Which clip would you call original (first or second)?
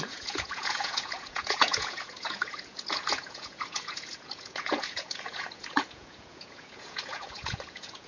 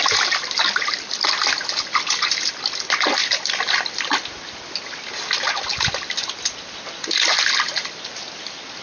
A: second